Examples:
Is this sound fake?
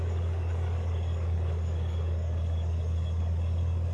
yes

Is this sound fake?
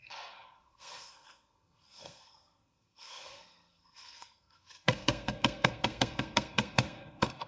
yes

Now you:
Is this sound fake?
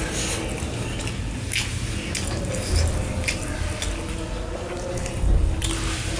no